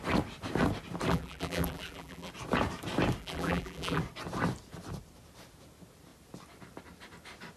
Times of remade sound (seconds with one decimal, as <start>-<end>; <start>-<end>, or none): 1.1-2.3; 3.2-4.0

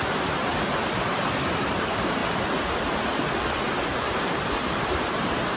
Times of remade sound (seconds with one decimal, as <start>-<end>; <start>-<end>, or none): 0.0-0.5; 1.2-2.2; 4.8-5.6

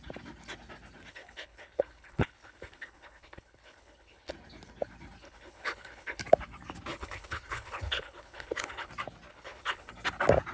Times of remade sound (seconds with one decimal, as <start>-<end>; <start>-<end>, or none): 1.1-4.3; 5.2-6.2; 6.9-8.9; 9.3-9.9